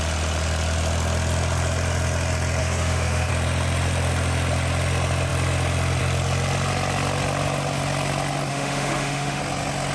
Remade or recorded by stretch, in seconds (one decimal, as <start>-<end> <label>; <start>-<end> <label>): 0.0-2.6 recorded; 2.6-3.3 remade; 3.3-8.5 recorded; 8.5-9.4 remade; 9.4-9.9 recorded